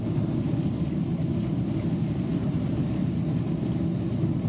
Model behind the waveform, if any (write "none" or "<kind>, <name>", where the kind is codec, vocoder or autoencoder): none